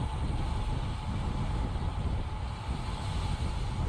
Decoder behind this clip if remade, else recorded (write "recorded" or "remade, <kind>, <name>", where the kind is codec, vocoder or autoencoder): recorded